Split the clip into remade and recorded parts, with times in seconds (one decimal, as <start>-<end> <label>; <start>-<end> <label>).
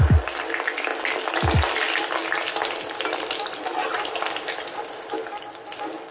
0.0-6.1 recorded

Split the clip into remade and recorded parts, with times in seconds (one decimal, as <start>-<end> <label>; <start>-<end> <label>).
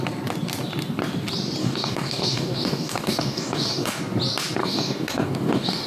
0.0-1.6 recorded; 1.6-4.0 remade; 4.0-4.6 recorded; 4.6-5.9 remade